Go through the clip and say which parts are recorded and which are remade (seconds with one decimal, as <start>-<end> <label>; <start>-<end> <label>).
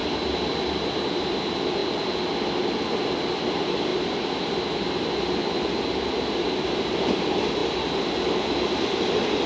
0.0-1.8 remade; 1.8-3.5 recorded; 3.5-3.9 remade; 3.9-6.5 recorded; 6.5-7.6 remade; 7.6-8.3 recorded; 8.3-9.5 remade